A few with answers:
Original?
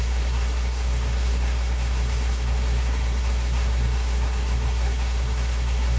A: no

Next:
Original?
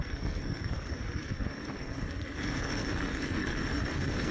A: no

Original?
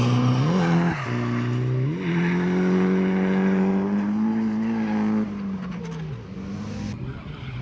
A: yes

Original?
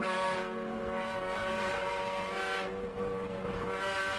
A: no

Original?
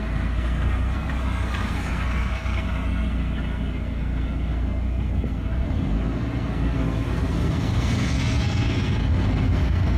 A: no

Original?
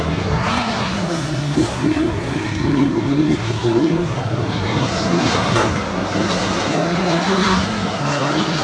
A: no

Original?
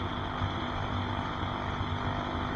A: yes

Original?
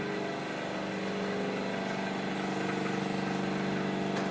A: yes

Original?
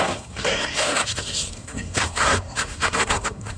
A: no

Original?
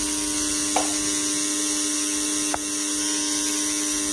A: yes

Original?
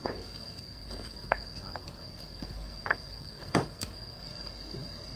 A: no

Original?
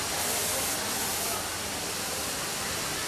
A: yes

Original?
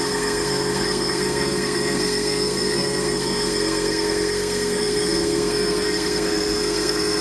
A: no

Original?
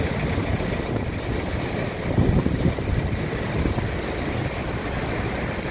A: yes